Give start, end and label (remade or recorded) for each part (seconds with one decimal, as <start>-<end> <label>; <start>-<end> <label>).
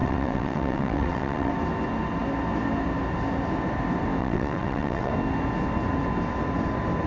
0.0-1.5 remade; 1.5-4.2 recorded; 4.2-5.1 remade; 5.1-7.1 recorded